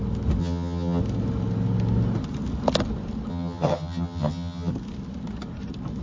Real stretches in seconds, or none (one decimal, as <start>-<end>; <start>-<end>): 0.0-0.4; 1.0-3.3; 4.7-6.0